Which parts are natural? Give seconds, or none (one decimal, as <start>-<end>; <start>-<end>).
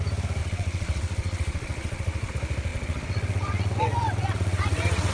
0.0-0.4; 2.3-2.7